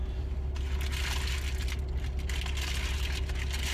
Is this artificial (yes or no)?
no